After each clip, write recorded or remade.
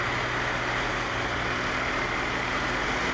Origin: recorded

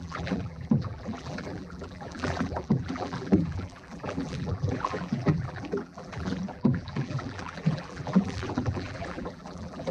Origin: remade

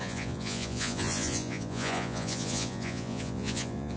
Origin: remade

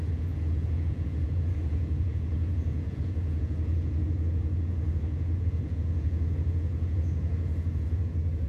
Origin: remade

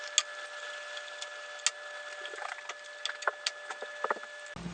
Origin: recorded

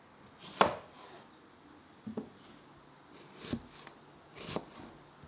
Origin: recorded